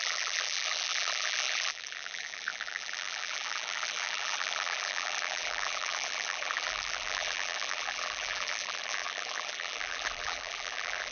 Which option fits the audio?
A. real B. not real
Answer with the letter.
B